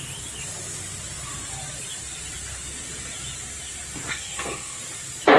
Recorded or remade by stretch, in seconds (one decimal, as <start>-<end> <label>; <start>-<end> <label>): 0.0-4.1 recorded; 4.1-4.8 remade; 4.8-5.4 recorded